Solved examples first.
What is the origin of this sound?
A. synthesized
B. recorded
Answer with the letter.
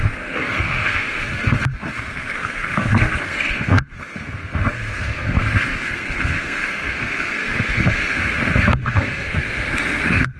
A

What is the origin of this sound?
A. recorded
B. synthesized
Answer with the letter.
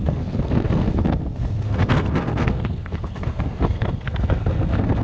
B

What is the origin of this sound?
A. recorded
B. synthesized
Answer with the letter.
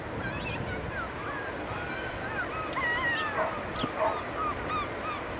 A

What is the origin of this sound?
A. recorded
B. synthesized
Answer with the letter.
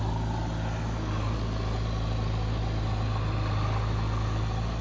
A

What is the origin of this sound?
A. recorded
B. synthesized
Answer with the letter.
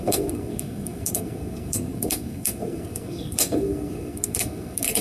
B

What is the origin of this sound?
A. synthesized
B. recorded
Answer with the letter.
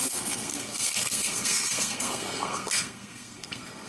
A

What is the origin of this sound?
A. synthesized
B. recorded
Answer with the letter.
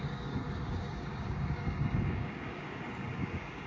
A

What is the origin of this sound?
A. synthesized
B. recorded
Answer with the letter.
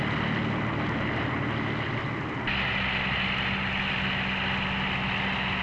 B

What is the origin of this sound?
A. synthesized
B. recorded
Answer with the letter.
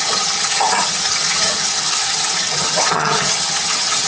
A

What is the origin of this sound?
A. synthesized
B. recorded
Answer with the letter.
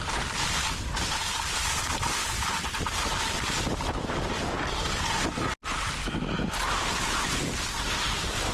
B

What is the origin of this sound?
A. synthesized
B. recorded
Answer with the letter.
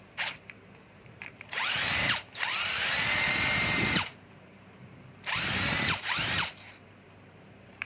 A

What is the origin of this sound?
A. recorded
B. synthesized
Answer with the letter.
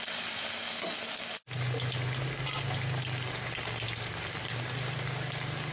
A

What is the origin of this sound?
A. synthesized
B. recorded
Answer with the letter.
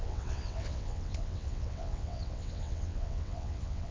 A